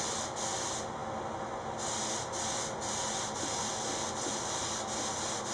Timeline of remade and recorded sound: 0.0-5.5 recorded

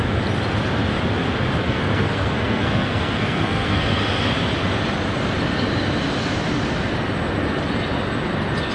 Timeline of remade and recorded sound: 0.0-1.6 recorded; 1.6-4.0 remade; 4.0-8.7 recorded

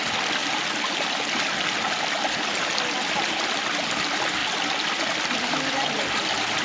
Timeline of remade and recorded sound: 0.0-0.4 remade; 0.4-3.3 recorded; 3.3-4.4 remade; 4.4-5.5 recorded; 5.5-6.6 remade